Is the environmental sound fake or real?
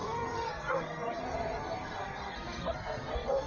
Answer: fake